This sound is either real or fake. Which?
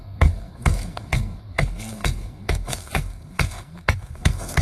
fake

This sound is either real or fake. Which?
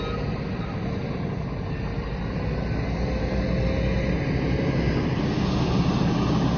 real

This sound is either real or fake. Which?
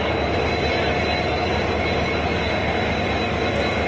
real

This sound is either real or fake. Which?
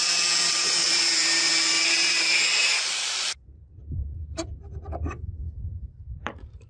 fake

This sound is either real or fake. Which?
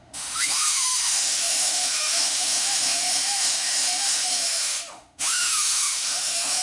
fake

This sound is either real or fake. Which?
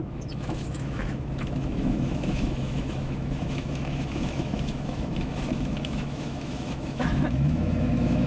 fake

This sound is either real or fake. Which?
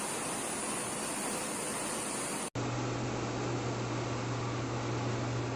real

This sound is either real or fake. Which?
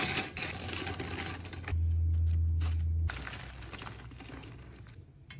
real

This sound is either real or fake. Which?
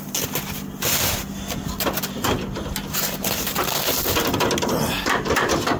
real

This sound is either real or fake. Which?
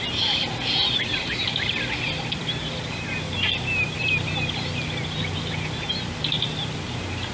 real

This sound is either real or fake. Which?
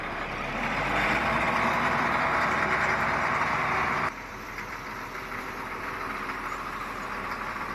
fake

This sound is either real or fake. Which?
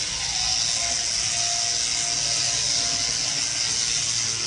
real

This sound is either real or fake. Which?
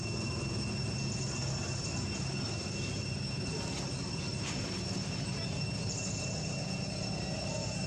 real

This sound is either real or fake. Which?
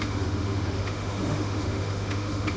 fake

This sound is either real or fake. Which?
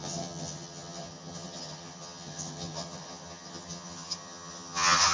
fake